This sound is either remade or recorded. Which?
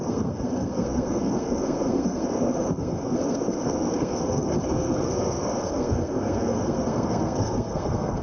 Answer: remade